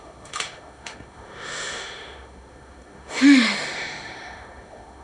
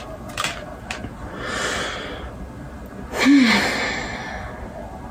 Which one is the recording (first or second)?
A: second